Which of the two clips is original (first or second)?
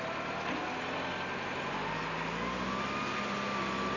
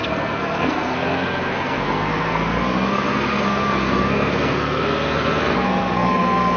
first